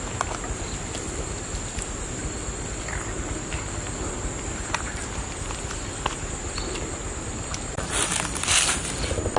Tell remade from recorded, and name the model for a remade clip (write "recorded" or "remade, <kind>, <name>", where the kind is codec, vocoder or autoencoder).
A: recorded